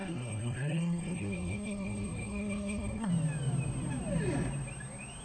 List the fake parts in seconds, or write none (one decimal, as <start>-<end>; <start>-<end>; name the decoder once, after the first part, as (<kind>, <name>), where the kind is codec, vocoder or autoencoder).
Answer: 0.0-3.1 (codec, SNAC)